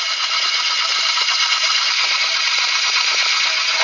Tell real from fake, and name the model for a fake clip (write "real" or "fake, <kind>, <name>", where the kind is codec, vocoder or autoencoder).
fake, vocoder, BigVGAN v2